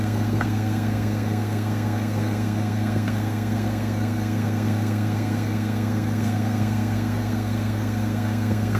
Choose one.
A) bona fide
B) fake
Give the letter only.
B